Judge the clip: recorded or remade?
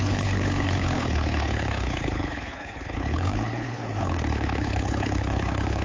remade